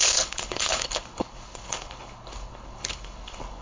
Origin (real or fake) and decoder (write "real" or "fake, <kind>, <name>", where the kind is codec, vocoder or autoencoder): fake, codec, HILCodec